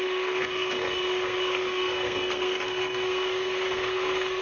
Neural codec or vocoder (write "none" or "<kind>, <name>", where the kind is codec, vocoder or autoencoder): codec, SNAC